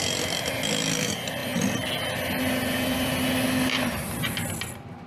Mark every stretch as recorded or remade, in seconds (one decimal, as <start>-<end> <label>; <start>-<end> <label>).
0.0-5.1 recorded